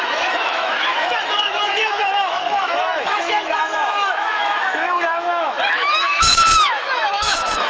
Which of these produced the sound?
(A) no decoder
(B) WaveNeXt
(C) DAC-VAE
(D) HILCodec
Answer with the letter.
C